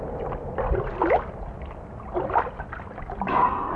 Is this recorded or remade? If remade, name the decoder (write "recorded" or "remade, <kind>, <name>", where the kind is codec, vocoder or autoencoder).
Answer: recorded